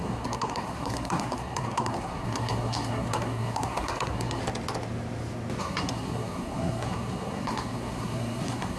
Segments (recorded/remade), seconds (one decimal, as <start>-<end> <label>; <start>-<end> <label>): 0.0-4.4 remade; 4.4-5.6 recorded; 5.6-8.8 remade